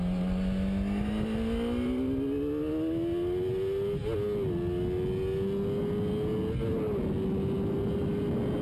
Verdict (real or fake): real